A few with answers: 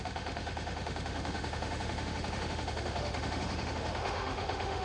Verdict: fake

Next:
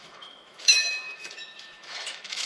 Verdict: fake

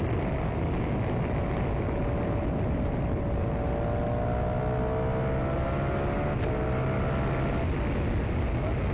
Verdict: real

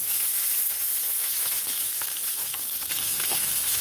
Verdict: fake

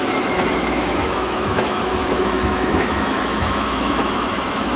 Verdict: fake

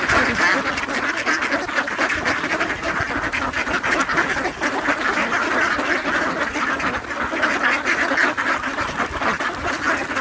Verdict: real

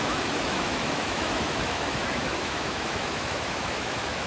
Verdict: fake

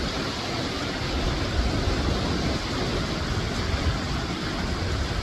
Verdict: real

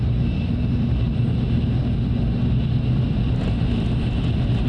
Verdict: real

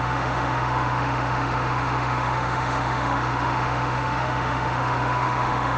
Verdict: fake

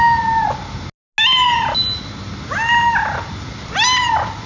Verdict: real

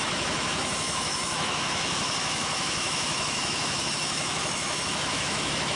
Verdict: fake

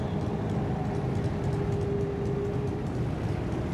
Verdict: real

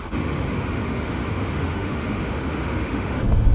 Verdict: fake